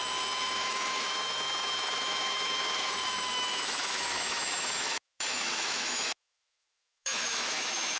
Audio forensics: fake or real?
fake